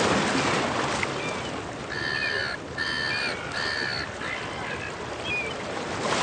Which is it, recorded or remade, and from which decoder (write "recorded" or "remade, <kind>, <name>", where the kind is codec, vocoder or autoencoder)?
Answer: recorded